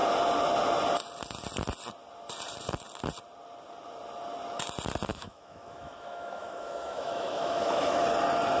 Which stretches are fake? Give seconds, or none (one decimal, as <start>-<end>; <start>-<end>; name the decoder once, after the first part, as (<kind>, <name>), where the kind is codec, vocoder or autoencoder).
5.1-8.0 (autoencoder, DAC-VAE)